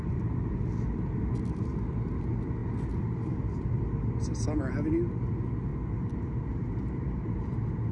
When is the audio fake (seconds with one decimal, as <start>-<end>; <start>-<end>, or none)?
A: none